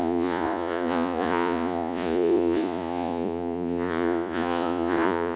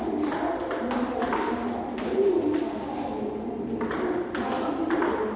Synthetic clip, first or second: first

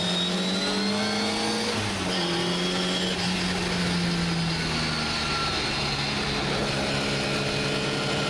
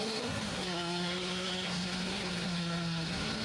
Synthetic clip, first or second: second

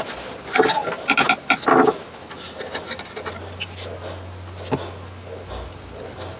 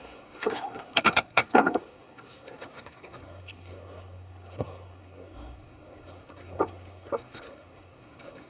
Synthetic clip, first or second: second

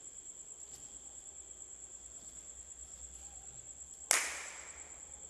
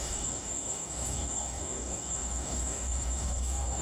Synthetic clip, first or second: second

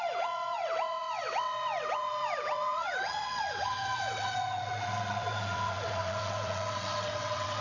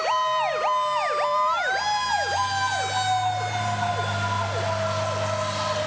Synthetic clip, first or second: first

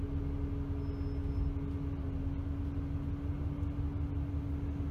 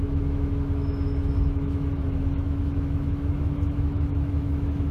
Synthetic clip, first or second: second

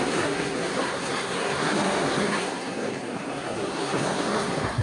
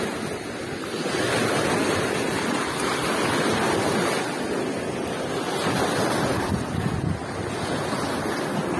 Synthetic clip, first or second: first